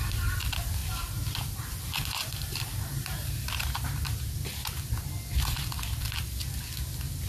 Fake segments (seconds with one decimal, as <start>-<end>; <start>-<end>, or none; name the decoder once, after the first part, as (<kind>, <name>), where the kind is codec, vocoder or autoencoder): 0.8-4.2 (vocoder, BigVGAN v2)